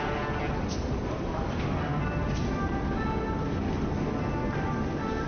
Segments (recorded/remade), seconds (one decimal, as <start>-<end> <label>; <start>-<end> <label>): 0.0-5.3 recorded